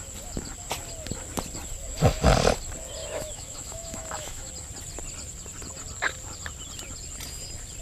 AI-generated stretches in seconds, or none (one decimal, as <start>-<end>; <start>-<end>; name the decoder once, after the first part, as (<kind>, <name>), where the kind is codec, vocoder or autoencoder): 3.0-4.5 (autoencoder, DAC-VAE)